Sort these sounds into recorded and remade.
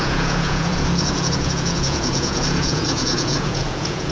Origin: remade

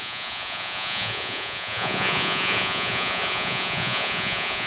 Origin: remade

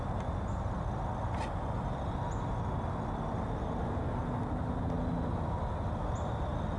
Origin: recorded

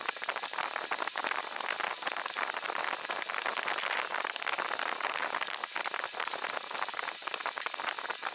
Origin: recorded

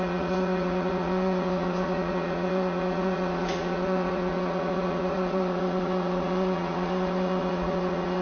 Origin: remade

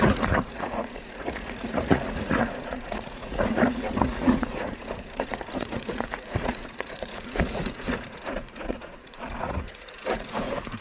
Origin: remade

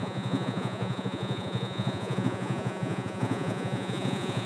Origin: remade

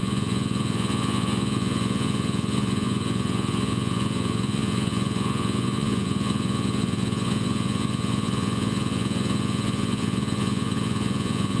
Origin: remade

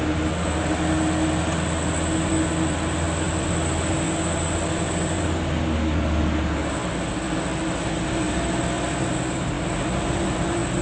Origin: recorded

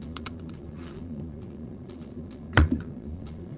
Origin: remade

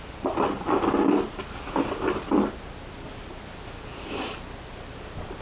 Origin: recorded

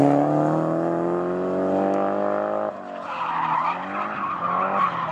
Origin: recorded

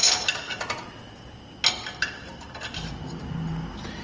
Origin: recorded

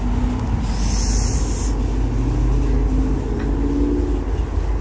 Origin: recorded